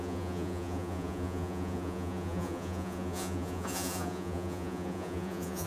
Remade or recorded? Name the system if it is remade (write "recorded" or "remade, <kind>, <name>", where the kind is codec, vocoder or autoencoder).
remade, vocoder, Vocos